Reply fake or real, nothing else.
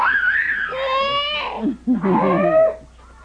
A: real